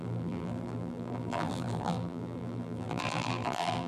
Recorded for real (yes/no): no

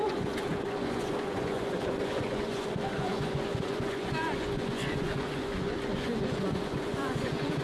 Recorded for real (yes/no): no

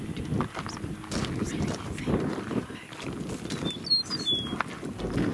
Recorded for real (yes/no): yes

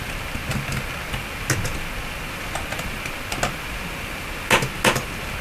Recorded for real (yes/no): yes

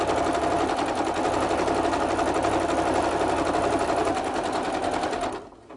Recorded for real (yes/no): yes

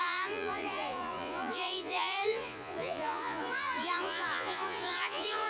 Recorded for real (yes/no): no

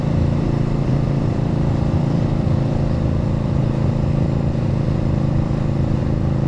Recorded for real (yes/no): no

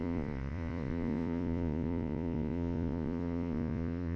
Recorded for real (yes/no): no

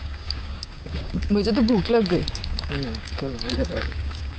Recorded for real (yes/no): no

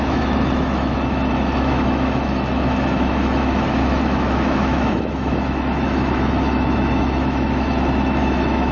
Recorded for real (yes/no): no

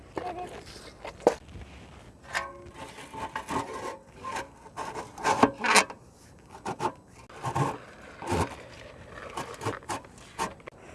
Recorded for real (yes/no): yes